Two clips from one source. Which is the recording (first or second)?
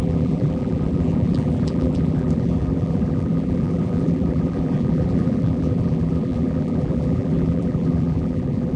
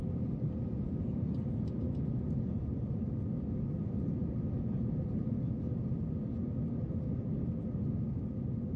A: second